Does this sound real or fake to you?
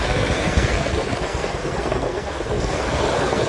fake